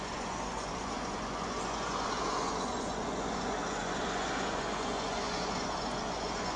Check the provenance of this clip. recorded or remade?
remade